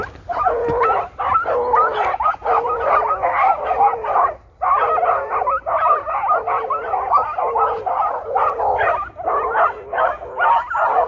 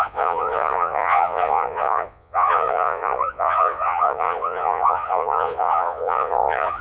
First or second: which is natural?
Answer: first